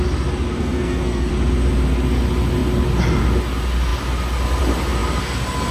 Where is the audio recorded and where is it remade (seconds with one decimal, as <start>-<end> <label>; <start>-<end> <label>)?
0.0-0.6 recorded; 0.6-1.3 remade; 1.3-5.7 recorded